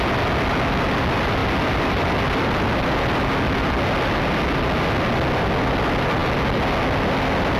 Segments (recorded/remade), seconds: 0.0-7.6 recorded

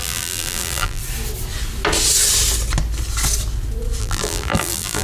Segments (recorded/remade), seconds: 0.0-1.0 remade; 1.0-4.0 recorded; 4.0-5.0 remade